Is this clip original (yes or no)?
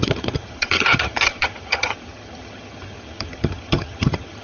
no